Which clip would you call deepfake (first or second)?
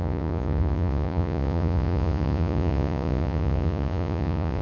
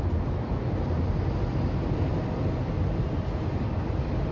first